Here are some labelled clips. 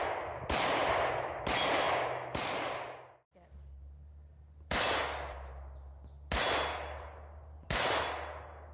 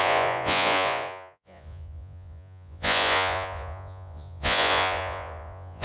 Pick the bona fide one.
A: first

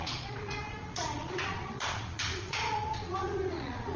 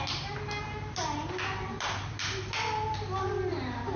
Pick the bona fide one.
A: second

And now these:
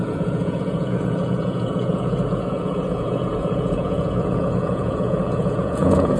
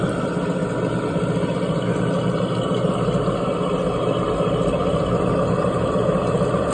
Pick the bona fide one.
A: second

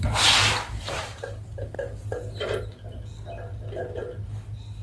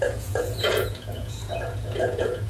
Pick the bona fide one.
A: first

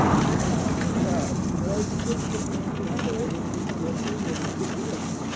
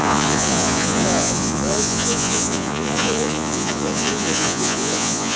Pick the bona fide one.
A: first